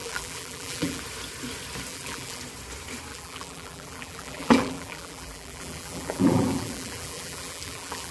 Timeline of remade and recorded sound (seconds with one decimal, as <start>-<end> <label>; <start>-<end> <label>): 0.0-1.0 remade; 1.0-1.9 recorded; 1.9-2.4 remade; 2.4-3.1 recorded; 3.1-8.1 remade